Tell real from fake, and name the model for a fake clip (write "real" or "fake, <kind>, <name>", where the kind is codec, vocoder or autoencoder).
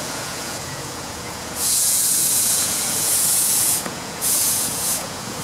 fake, vocoder, Vocos